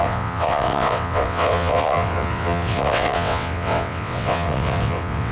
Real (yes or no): no